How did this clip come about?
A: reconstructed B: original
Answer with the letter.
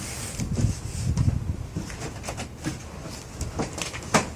B